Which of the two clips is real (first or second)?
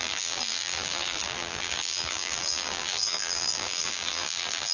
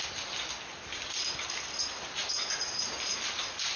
second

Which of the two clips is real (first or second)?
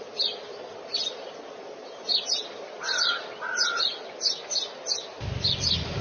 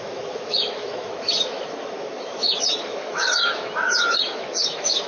first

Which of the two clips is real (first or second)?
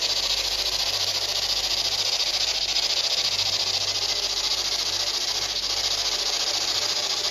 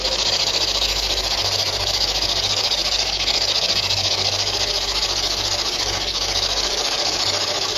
first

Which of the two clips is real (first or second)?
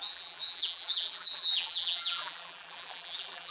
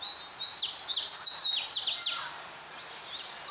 second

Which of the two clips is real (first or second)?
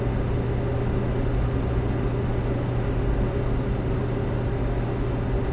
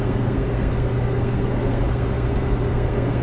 first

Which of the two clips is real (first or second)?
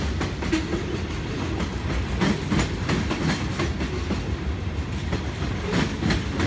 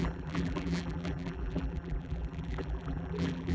first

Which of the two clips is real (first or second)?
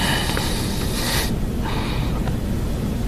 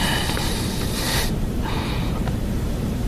first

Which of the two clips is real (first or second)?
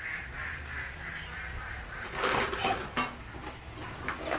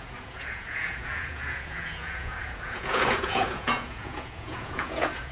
first